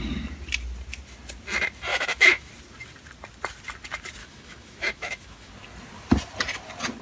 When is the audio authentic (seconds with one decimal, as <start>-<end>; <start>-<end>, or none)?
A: 0.0-1.9; 2.5-4.2; 5.5-7.0